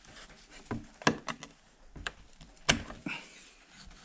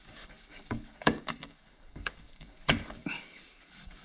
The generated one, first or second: second